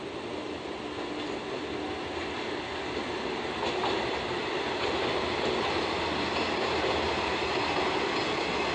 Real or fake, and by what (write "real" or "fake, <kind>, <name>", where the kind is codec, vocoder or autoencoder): real